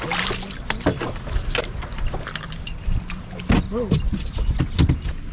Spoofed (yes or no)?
no